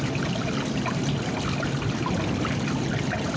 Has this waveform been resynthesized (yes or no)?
no